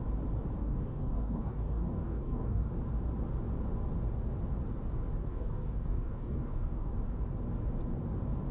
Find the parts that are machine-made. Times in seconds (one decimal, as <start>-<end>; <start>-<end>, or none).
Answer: 0.6-2.7; 5.2-6.9